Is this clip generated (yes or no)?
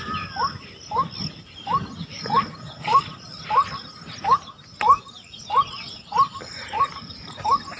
no